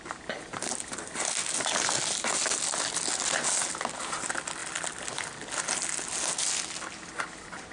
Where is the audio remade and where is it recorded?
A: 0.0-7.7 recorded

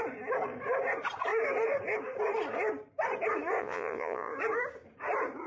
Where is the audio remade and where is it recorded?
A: 0.0-3.6 recorded; 3.6-4.3 remade; 4.3-5.5 recorded

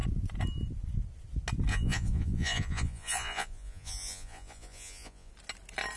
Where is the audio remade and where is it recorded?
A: 0.0-1.7 recorded; 1.7-5.3 remade; 5.3-6.0 recorded

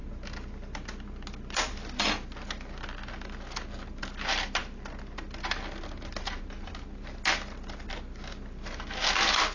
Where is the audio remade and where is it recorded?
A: 0.0-9.5 recorded

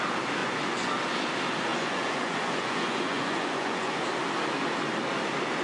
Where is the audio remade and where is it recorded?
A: 0.0-0.4 recorded; 0.4-0.9 remade; 0.9-1.7 recorded; 1.7-4.0 remade; 4.0-5.6 recorded